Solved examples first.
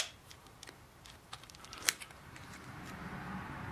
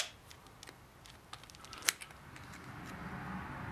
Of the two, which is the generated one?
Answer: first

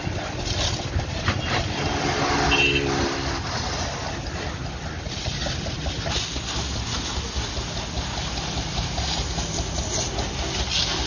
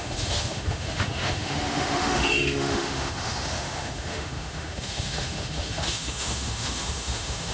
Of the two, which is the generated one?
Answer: second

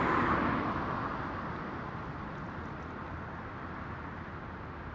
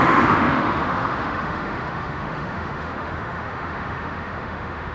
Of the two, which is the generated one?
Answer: second